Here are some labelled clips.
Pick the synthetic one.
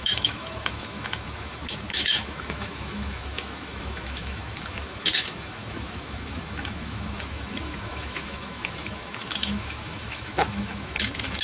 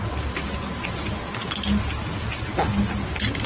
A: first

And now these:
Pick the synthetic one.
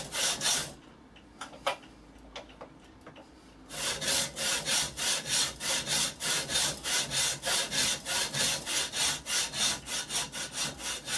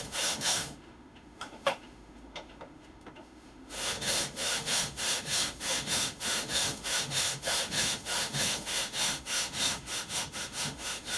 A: second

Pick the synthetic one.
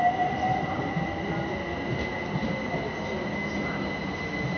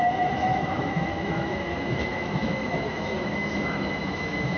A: second